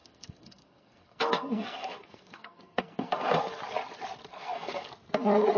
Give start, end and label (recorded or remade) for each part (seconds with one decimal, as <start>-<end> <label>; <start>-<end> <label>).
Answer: 0.0-3.4 remade; 3.4-4.3 recorded; 4.3-4.9 remade; 4.9-5.6 recorded

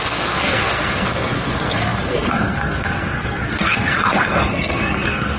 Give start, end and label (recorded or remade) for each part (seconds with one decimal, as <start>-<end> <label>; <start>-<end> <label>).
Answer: 0.0-5.4 remade

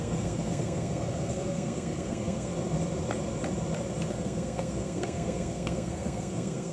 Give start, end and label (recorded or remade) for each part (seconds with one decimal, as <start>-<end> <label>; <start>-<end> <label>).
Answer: 0.0-2.5 remade; 2.5-4.1 recorded; 4.1-6.7 remade

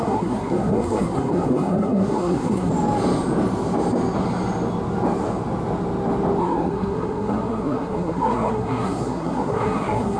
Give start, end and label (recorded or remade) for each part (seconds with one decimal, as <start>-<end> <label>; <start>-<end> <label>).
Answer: 0.0-2.7 remade; 2.7-6.4 recorded; 6.4-10.2 remade

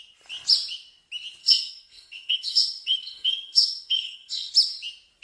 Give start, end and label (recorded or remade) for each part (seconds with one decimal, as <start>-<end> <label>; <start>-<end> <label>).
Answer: 0.0-1.4 recorded; 1.4-4.5 remade; 4.5-5.2 recorded

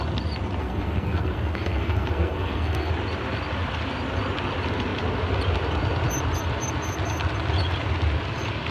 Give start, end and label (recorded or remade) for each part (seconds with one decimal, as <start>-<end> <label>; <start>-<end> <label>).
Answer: 0.0-0.6 recorded; 0.6-2.9 remade; 2.9-8.7 recorded

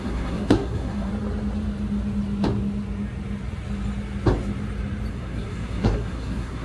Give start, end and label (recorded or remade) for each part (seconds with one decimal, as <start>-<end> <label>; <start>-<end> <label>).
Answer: 0.0-1.1 remade; 1.1-5.1 recorded; 5.1-6.6 remade

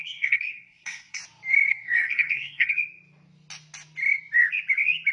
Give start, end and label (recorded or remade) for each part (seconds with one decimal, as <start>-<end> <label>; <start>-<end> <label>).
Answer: 0.0-1.2 remade; 1.2-1.7 recorded; 1.7-2.7 remade; 2.7-5.1 recorded